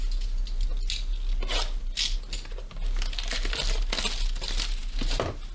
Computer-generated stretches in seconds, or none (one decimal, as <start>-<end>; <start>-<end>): none